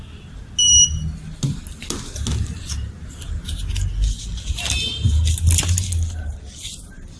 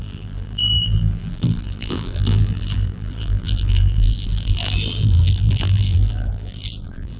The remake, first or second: second